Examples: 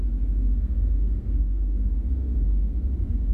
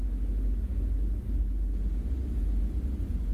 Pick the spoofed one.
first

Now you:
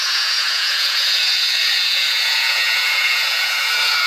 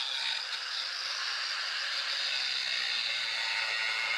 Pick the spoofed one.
first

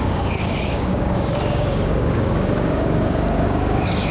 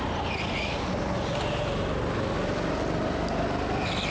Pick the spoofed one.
first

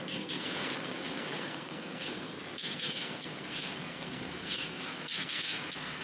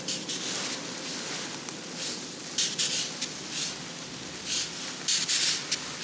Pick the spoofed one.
first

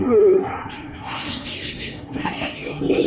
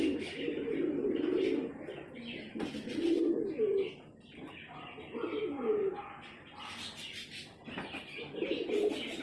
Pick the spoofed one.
first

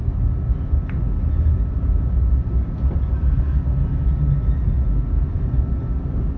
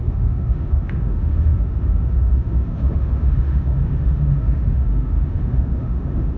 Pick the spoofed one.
second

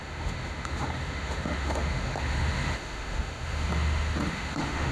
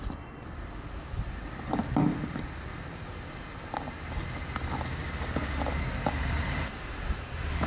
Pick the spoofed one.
first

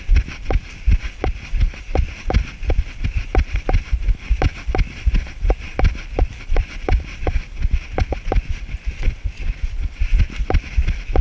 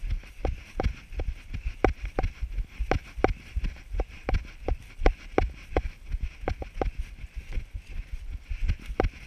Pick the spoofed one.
first